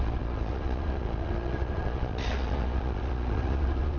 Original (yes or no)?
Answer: no